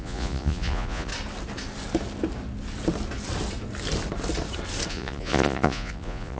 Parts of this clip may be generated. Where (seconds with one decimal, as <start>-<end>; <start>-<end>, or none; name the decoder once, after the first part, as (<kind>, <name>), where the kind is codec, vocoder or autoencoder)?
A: 0.0-1.1 (vocoder, Vocos); 4.9-6.4